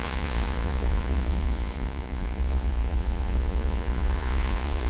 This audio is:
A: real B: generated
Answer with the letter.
B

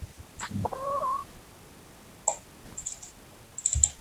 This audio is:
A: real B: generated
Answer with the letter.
A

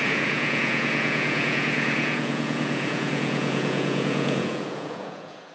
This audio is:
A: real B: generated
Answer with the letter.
B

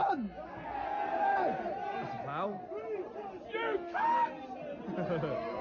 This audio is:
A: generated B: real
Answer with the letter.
B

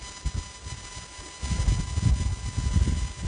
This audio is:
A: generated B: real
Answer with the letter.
B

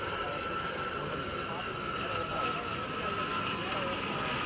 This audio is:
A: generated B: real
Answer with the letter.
B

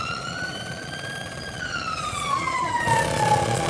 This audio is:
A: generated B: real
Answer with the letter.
A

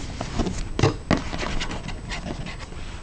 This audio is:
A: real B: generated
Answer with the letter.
A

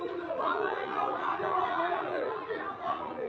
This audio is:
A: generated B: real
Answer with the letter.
A